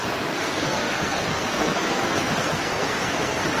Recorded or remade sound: remade